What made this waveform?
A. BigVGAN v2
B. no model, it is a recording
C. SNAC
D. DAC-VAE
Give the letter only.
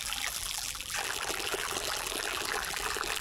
A